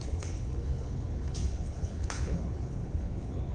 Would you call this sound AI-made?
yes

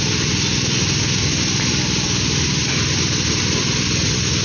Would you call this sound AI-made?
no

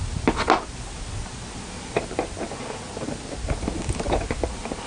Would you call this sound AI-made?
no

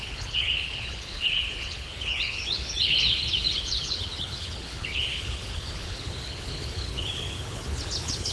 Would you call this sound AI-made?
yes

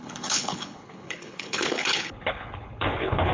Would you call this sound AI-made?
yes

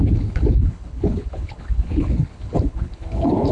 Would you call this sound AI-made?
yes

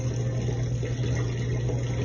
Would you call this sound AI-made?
no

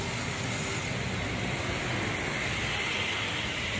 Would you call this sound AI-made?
no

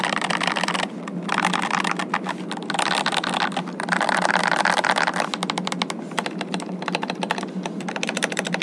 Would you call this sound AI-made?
no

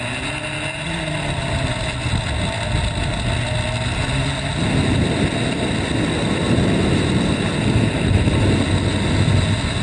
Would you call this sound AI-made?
no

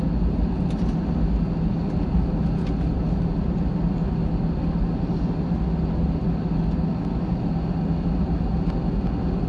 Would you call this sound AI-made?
no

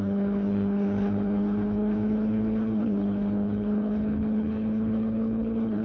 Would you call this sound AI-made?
yes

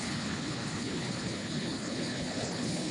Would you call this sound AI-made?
yes